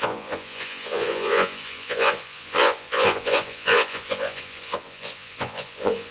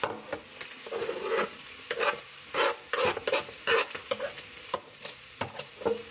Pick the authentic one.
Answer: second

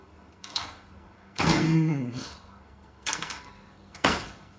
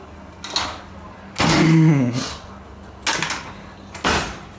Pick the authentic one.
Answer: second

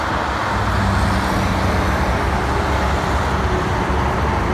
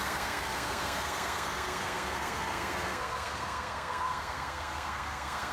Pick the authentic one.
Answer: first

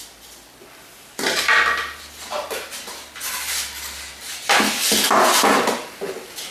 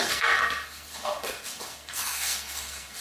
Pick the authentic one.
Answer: first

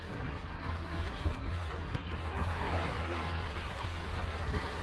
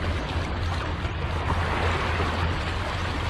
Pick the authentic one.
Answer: second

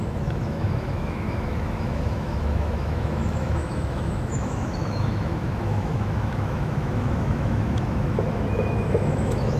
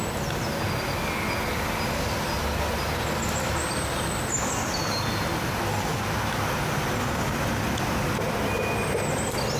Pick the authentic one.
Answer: second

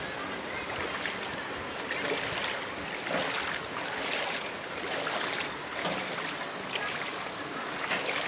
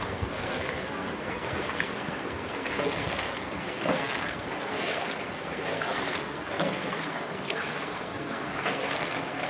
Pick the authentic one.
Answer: first